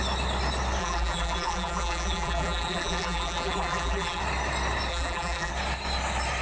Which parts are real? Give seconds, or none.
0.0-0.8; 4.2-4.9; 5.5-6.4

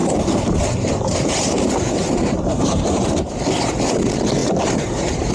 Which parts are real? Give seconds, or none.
3.2-4.4

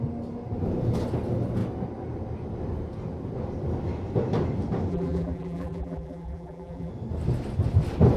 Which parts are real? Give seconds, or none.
0.0-4.9; 6.9-8.2

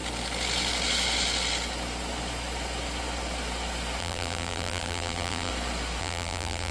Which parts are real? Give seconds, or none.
0.0-4.0; 5.5-6.0

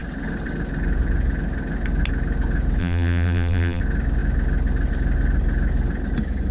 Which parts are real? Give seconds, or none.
0.0-2.8; 3.8-6.5

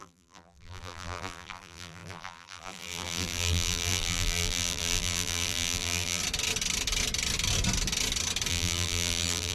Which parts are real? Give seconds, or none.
6.2-8.5